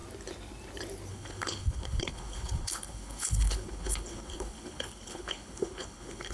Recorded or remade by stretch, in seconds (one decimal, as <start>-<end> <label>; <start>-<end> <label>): 0.0-1.1 recorded; 1.1-6.3 remade